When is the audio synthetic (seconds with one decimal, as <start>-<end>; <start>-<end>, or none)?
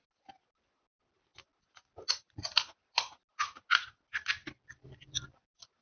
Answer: none